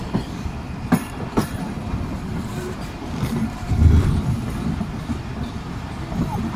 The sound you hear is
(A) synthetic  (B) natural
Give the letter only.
A